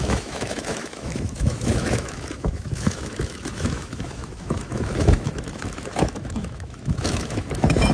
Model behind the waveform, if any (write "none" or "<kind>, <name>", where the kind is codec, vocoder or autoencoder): autoencoder, DAC-VAE